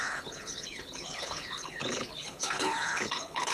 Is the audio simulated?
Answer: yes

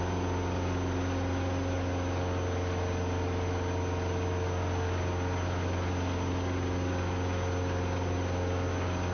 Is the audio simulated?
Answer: no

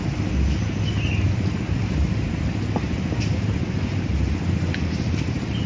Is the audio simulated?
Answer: no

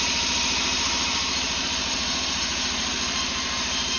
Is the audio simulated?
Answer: yes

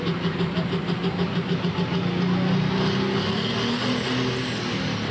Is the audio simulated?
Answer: no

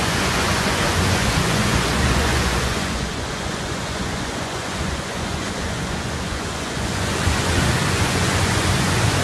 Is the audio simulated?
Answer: yes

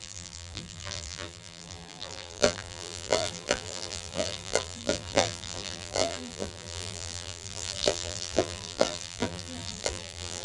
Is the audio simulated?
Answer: yes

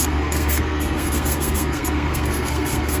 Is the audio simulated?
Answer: yes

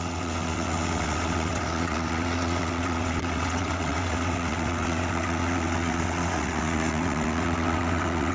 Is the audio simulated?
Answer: yes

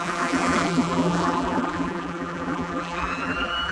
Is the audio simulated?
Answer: yes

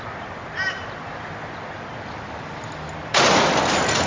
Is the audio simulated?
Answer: no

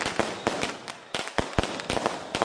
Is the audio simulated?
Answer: no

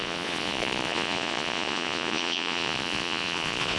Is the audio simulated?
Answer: yes